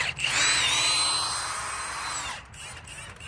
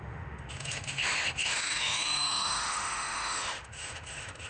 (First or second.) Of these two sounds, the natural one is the first